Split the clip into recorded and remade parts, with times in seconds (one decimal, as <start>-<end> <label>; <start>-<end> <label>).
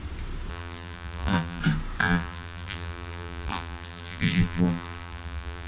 0.0-0.5 recorded; 0.5-1.6 remade; 1.6-2.0 recorded; 2.0-5.7 remade